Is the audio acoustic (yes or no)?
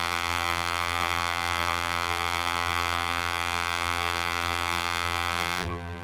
no